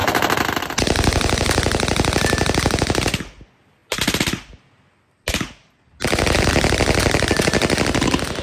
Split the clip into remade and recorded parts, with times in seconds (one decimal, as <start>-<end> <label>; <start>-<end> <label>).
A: 0.0-8.4 recorded

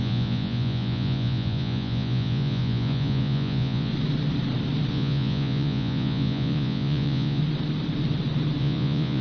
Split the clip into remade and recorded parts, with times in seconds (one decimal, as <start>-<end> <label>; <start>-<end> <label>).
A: 0.0-3.9 remade; 3.9-4.9 recorded; 4.9-7.4 remade; 7.4-8.6 recorded; 8.6-9.2 remade

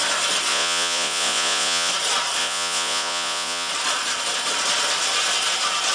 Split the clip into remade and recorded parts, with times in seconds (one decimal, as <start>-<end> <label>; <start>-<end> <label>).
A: 0.0-0.5 recorded; 0.5-1.9 remade; 1.9-2.4 recorded; 2.4-3.7 remade; 3.7-5.9 recorded